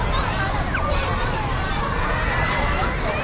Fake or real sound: real